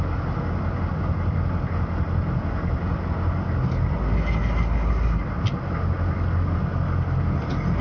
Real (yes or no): yes